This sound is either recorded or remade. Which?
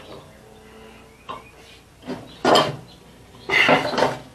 recorded